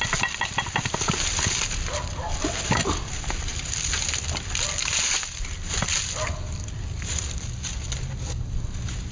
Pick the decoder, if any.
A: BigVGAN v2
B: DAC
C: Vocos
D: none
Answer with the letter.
D